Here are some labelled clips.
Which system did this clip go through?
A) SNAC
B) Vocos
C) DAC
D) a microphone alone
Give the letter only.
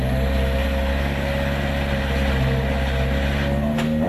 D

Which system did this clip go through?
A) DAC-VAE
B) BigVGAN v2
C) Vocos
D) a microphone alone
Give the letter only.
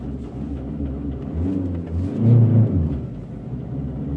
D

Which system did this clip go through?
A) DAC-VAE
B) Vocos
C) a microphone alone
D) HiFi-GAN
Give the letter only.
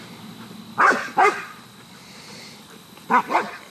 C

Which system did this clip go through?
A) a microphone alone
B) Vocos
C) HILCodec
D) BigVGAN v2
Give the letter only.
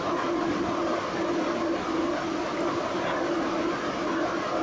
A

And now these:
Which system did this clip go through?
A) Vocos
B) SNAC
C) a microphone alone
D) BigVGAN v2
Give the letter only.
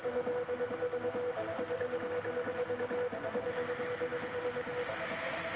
C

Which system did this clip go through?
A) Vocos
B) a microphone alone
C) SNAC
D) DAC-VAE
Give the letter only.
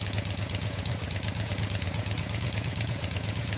A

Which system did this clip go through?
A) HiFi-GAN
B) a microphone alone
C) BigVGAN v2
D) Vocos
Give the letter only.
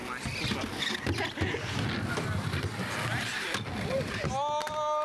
B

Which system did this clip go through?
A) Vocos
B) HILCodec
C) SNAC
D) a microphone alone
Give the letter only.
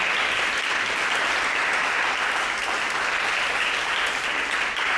D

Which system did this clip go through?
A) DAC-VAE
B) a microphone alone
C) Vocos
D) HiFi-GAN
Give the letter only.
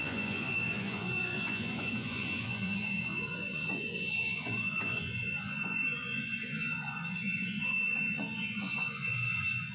C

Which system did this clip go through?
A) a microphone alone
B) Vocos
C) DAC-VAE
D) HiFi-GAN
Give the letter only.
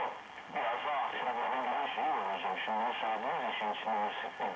A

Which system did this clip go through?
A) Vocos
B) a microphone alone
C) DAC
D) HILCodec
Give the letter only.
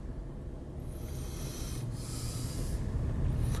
B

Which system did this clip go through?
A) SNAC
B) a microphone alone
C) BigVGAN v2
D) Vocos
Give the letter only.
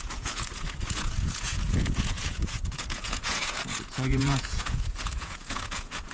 D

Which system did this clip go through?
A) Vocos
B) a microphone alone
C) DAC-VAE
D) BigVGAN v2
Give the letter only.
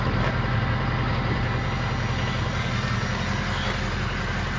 B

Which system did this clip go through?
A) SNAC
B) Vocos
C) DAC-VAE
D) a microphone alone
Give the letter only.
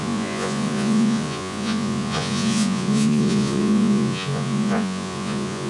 B